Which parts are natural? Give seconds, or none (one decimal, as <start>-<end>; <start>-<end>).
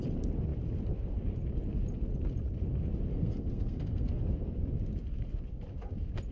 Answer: 0.0-3.1; 4.2-6.3